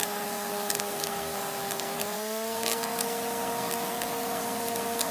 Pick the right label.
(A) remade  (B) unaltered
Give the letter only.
A